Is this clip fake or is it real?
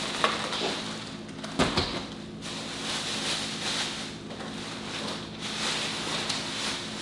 real